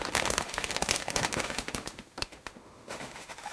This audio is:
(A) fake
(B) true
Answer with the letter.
A